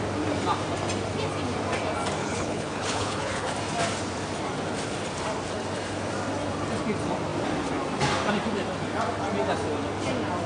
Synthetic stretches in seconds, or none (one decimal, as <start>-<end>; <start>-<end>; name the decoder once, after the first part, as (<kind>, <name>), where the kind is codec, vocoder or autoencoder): 2.2-3.5 (codec, HILCodec)